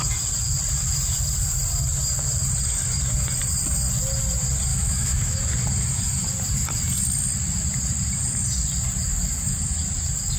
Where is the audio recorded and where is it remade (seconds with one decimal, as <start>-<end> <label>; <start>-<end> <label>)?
0.0-4.7 recorded; 4.7-5.4 remade; 5.4-10.4 recorded